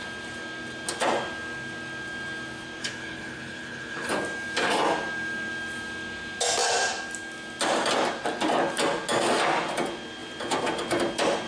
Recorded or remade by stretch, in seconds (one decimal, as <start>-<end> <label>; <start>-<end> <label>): 0.0-2.8 recorded; 2.8-4.1 remade; 4.1-11.5 recorded